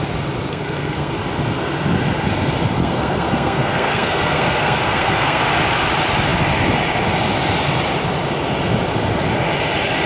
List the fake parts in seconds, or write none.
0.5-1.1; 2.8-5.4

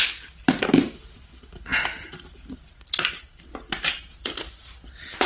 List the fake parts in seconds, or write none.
none

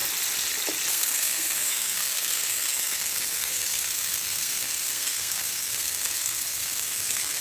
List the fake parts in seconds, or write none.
0.9-7.4

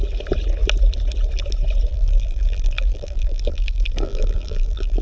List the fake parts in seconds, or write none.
1.9-5.0

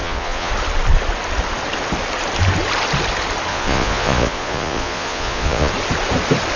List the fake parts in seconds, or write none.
0.0-0.5; 3.5-5.7

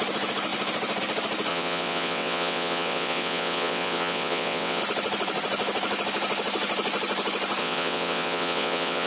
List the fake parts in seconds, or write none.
1.5-4.8; 7.6-9.1